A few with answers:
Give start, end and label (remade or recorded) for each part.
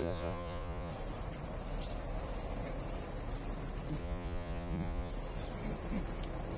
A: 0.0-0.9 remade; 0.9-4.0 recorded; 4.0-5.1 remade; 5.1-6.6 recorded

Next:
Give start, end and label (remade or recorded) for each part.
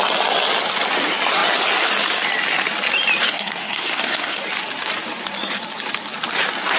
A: 0.0-3.3 recorded; 3.3-4.4 remade; 4.4-6.8 recorded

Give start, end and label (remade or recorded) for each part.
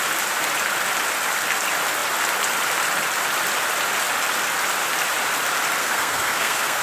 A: 0.0-5.8 recorded; 5.8-6.8 remade